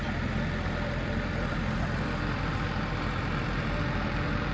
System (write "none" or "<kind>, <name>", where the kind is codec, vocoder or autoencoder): none